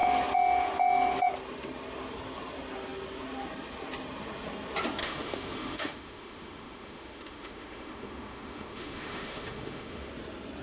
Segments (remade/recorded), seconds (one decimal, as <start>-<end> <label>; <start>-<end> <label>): 0.0-5.0 recorded; 5.0-10.1 remade; 10.1-10.6 recorded